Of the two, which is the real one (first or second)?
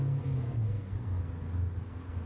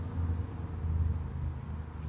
second